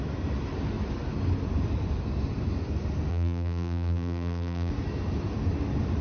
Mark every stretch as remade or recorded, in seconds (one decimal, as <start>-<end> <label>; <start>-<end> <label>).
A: 0.0-3.1 recorded; 3.1-4.7 remade; 4.7-6.0 recorded